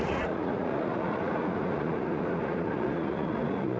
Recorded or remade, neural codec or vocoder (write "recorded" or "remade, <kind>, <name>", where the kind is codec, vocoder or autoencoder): remade, vocoder, Vocos